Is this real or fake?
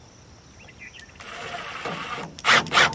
real